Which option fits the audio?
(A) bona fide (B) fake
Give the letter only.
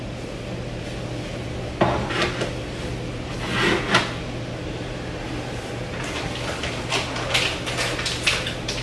A